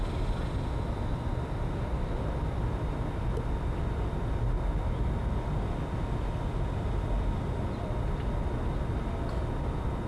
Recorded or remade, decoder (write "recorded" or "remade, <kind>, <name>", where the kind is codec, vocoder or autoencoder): recorded